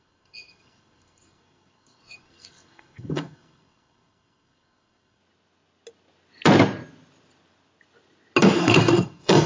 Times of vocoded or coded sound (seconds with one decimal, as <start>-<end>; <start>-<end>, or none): 0.0-5.2; 8.6-9.5